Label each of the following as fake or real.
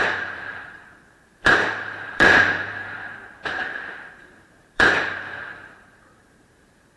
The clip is fake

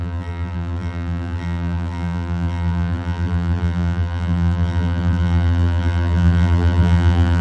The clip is fake